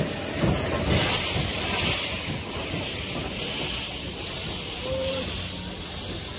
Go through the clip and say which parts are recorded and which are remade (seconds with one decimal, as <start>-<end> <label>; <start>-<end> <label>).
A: 0.0-1.5 recorded; 1.5-5.3 remade; 5.3-6.4 recorded